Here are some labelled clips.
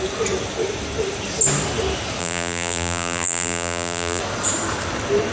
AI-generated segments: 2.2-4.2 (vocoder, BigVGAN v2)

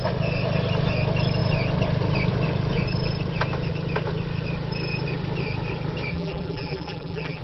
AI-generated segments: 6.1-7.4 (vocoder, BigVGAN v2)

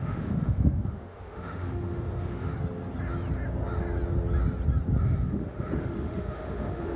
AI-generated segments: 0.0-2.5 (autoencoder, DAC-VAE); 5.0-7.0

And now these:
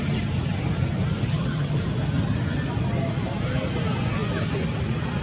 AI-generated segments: 1.3-1.8 (vocoder, HiFi-GAN)

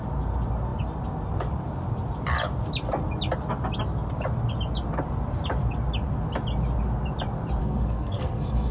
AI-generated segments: 7.6-8.7 (codec, SNAC)

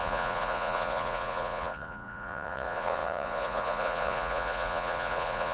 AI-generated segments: 0.0-5.5 (vocoder, Vocos)

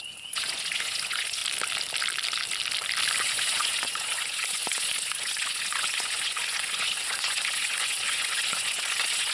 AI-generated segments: 0.0-1.4 (vocoder, Vocos); 3.2-9.3

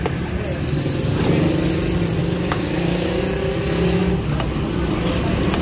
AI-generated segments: 2.2-3.2 (codec, DAC)